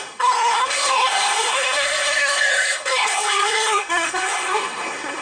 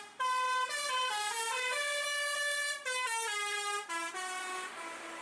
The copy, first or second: first